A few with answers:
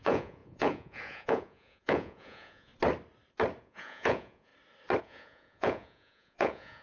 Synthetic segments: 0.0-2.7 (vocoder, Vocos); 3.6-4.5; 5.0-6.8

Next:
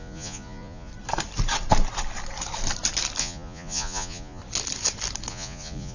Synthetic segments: 0.0-0.9 (vocoder, Vocos); 3.2-4.4; 5.3-5.9

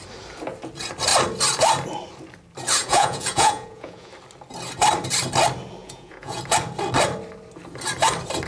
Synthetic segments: 2.8-4.1 (vocoder, Vocos); 5.8-6.4

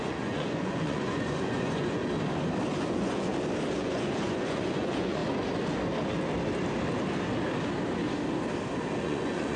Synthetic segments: 0.0-2.0 (vocoder, Vocos); 2.8-3.3; 3.8-5.2; 9.0-9.6

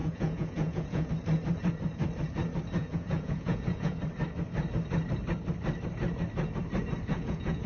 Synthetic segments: 0.0-1.1 (vocoder, Vocos); 2.8-4.0; 7.1-7.7

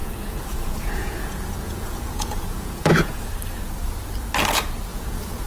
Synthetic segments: 0.0-3.3 (vocoder, Vocos); 4.9-5.5